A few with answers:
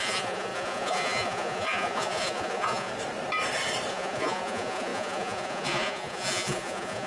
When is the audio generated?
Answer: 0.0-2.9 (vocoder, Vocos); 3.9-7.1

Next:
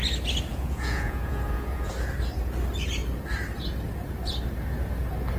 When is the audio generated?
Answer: 0.5-1.9 (vocoder, Vocos)

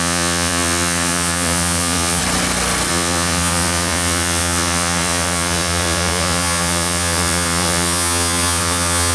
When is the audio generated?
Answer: 0.0-2.2 (vocoder, Vocos); 2.9-9.1

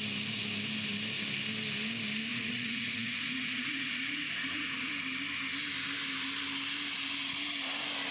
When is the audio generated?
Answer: 2.3-4.9 (vocoder, Vocos)

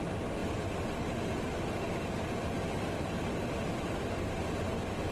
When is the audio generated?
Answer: none

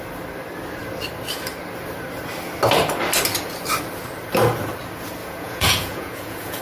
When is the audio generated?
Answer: 5.2-6.6 (vocoder, Vocos)